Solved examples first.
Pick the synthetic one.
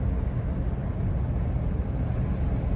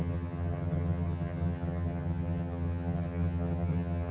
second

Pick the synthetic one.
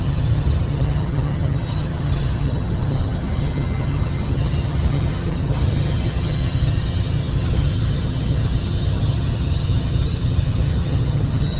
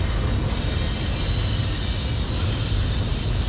first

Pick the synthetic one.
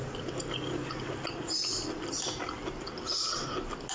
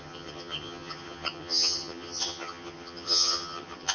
second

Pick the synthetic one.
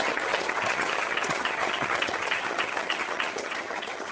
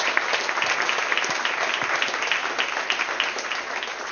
first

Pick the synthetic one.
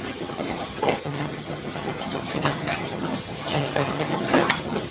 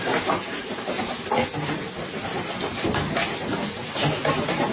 first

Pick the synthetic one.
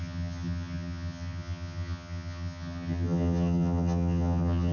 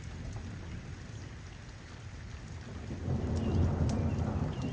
first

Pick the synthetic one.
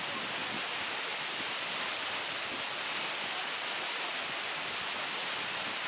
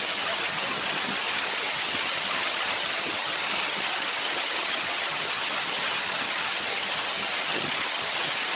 second